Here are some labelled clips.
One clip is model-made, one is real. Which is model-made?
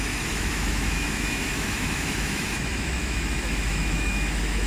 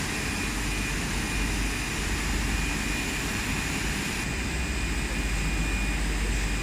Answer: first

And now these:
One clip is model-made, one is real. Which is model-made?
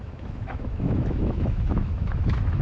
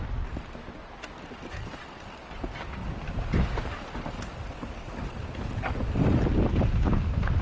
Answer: first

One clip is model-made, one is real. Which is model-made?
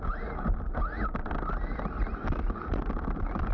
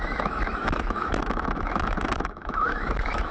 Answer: second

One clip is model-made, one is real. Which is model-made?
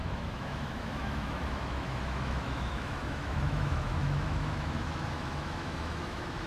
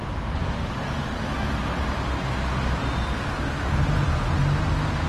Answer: first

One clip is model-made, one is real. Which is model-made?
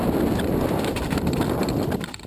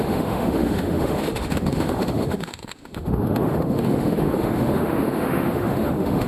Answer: second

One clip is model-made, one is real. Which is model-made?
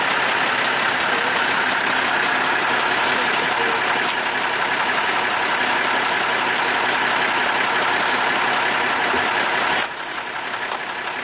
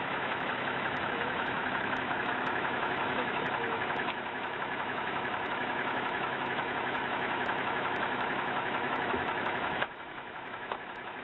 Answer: second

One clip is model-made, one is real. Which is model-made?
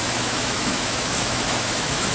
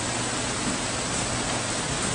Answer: first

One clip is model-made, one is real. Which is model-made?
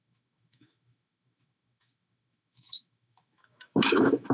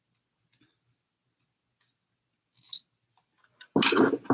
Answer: first